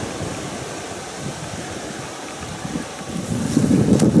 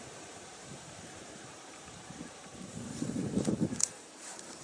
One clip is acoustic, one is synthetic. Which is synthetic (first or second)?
second